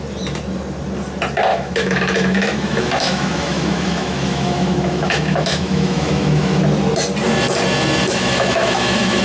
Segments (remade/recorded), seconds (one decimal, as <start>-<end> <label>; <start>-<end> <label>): 0.0-1.5 recorded; 1.5-6.6 remade; 6.6-8.0 recorded; 8.0-9.2 remade